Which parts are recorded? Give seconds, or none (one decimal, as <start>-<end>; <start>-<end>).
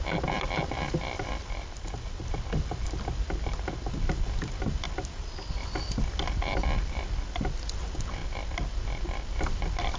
0.0-10.0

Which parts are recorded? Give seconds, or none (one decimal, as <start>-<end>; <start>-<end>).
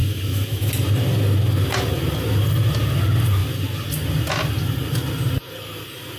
0.7-6.2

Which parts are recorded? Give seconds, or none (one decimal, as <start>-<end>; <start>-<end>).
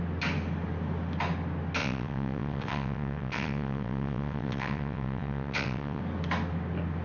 0.0-1.8; 6.0-7.0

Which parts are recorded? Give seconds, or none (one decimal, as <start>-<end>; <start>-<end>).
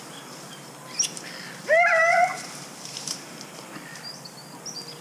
0.0-2.3; 3.5-5.0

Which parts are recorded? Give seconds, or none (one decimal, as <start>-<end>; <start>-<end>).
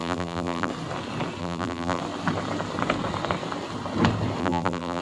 0.7-1.4; 2.0-4.4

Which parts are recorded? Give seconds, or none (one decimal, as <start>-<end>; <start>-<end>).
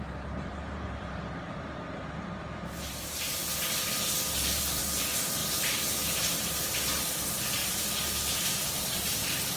3.4-4.3; 7.6-8.4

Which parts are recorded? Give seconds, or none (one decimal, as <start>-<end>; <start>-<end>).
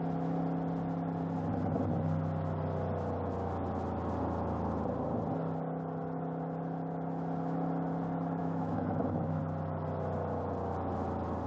0.0-8.4; 9.4-11.5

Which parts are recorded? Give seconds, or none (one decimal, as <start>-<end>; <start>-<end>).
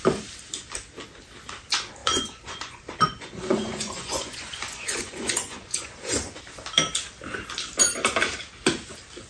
0.0-2.0; 6.4-9.3